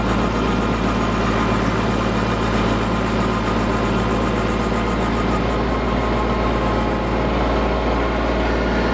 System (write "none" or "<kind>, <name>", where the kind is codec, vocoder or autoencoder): none